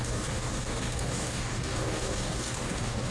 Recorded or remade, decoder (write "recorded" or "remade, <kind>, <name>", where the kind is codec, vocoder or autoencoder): remade, codec, DAC